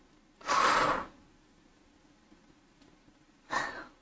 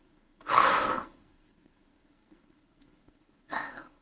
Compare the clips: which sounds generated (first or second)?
second